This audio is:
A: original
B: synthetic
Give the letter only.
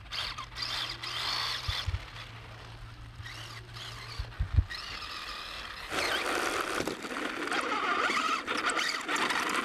A